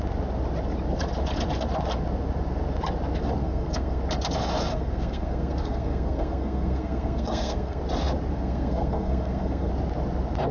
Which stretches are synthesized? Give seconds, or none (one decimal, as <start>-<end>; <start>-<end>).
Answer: 3.4-4.0; 4.7-7.8; 8.3-9.7